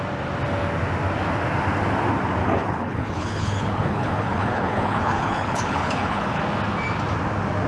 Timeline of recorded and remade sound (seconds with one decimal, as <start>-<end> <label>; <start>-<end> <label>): 0.0-2.4 recorded; 2.4-6.4 remade; 6.4-7.7 recorded